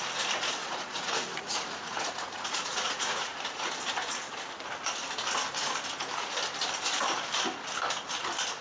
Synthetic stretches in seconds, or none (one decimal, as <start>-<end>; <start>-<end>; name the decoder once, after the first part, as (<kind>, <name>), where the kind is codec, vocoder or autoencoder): 0.6-3.7 (vocoder, Vocos)

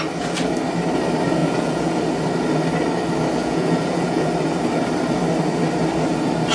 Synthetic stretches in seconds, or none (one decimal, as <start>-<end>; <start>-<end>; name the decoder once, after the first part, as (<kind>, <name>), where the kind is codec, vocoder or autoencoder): 1.4-2.0 (vocoder, Vocos); 3.4-4.3

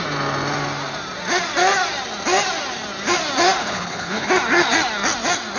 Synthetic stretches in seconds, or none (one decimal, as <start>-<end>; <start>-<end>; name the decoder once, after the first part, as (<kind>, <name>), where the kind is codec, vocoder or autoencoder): 3.6-4.3 (codec, HILCodec)

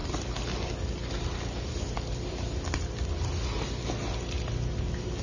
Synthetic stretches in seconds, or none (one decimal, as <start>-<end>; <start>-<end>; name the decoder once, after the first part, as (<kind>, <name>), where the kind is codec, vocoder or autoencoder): none